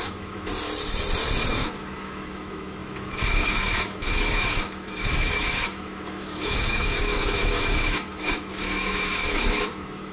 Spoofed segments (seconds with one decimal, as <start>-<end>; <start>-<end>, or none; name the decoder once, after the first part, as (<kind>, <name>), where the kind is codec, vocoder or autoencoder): 0.0-0.5 (autoencoder, DAC-VAE); 1.5-10.1